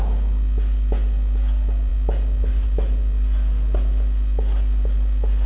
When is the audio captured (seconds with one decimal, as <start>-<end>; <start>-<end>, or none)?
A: 0.0-5.5